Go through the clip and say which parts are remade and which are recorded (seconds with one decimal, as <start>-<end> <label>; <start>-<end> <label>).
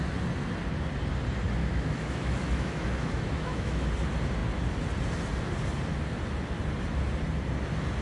0.0-1.6 recorded; 1.6-3.9 remade; 3.9-8.0 recorded